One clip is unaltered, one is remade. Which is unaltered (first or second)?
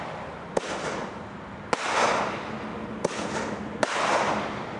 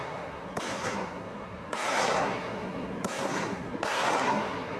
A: first